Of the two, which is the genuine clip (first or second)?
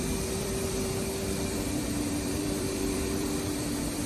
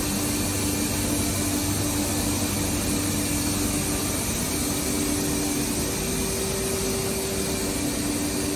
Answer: second